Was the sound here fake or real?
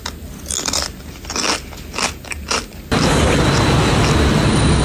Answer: real